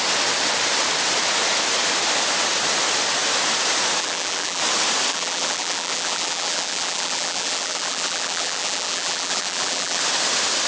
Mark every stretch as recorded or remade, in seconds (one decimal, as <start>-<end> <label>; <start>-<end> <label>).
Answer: 0.0-4.0 recorded; 4.0-4.6 remade; 4.6-5.1 recorded; 5.1-10.0 remade; 10.0-10.7 recorded